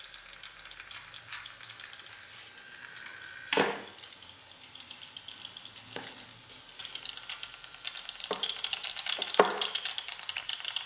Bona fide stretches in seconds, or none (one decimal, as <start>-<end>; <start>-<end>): 0.0-1.3; 1.9-10.9